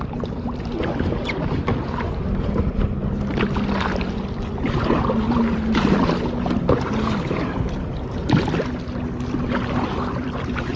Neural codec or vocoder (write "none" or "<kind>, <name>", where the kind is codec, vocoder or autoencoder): none